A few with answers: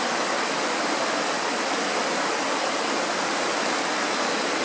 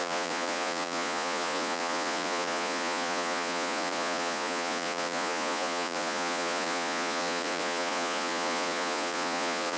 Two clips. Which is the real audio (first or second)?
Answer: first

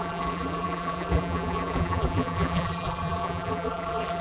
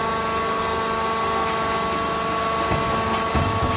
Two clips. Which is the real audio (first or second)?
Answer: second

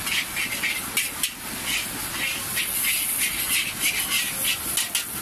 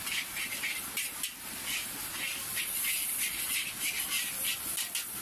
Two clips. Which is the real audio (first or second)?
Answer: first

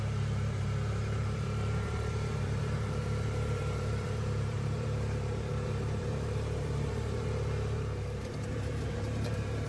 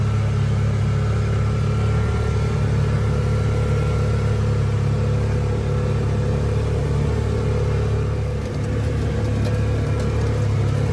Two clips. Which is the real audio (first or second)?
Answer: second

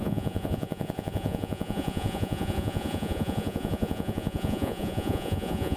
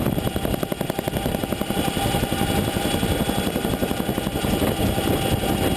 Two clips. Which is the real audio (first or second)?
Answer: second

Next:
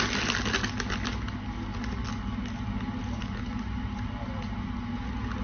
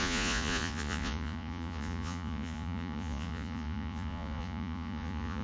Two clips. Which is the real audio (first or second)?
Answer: first